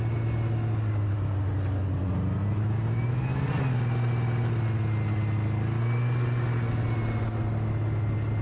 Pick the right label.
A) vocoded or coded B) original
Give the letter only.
B